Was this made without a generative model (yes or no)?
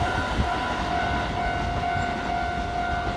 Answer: yes